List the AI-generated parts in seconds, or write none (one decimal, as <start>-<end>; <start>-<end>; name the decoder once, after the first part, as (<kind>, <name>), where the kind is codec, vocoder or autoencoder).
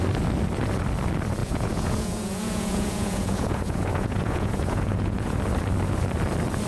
1.4-5.4 (vocoder, Vocos)